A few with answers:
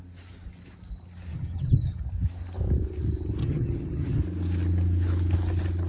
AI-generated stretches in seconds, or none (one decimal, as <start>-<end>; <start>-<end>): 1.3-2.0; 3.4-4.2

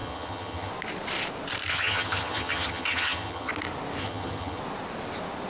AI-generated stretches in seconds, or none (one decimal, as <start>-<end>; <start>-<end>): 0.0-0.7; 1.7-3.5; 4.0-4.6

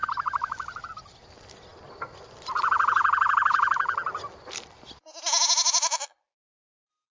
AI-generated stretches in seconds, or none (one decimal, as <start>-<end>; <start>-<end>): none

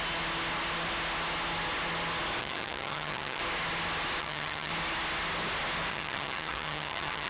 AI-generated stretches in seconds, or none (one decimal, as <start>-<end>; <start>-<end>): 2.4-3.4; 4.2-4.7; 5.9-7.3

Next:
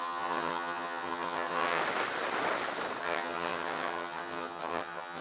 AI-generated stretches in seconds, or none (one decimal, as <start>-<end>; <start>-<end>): 0.0-1.8; 3.0-5.2